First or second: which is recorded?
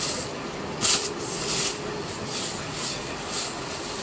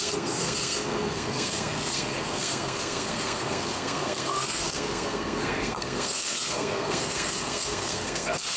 first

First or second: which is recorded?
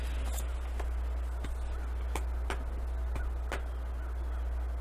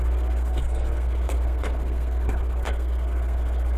first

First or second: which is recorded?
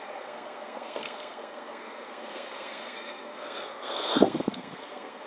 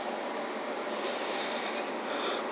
second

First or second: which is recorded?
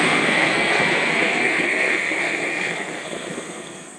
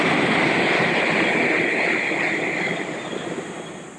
second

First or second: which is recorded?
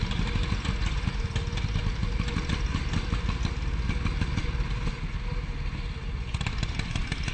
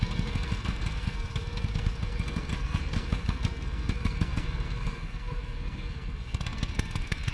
first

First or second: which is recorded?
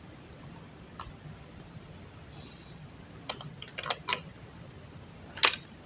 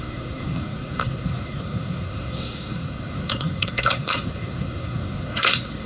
first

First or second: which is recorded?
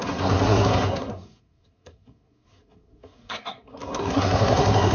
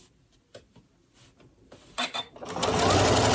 second